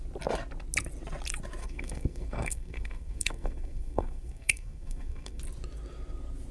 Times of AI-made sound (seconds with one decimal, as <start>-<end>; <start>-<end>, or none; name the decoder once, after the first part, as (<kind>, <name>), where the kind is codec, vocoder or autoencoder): 1.6-5.4 (codec, SNAC)